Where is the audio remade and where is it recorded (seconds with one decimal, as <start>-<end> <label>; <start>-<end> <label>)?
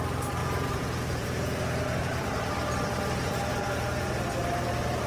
0.0-0.4 recorded; 0.4-2.2 remade; 2.2-3.5 recorded; 3.5-4.1 remade; 4.1-5.1 recorded